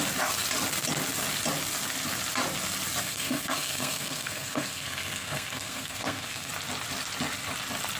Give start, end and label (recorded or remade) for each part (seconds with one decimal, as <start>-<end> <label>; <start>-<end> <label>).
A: 0.0-3.0 recorded; 3.0-6.5 remade; 6.5-8.0 recorded

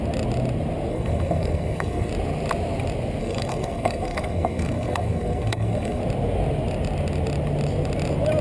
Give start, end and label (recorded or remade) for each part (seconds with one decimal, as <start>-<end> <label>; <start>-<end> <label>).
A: 0.0-0.9 recorded; 0.9-2.1 remade; 2.1-3.2 recorded; 3.2-6.0 remade; 6.0-8.4 recorded

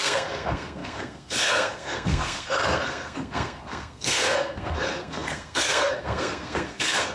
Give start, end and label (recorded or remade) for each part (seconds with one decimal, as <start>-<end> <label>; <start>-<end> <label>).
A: 0.0-7.1 remade

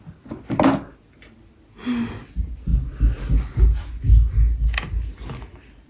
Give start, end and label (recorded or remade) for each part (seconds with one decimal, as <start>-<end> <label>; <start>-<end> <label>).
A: 0.0-5.9 recorded

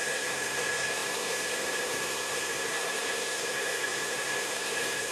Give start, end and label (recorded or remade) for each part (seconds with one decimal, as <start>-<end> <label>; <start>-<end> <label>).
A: 0.0-5.1 remade